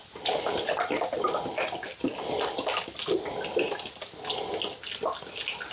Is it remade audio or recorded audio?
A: recorded